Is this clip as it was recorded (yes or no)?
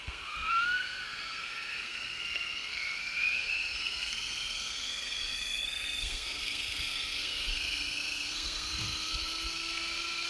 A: no